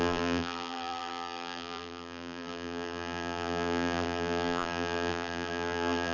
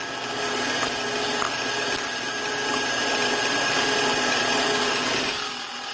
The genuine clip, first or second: second